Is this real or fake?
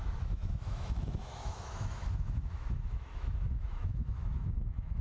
fake